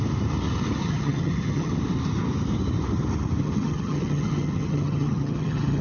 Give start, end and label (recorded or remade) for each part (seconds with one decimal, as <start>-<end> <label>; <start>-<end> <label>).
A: 0.0-0.8 recorded; 0.8-1.7 remade; 1.7-3.4 recorded; 3.4-5.8 remade